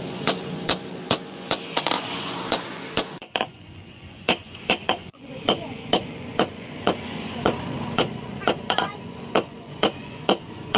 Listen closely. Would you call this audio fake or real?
fake